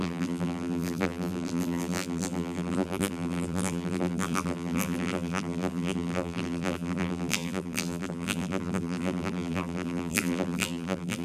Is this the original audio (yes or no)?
no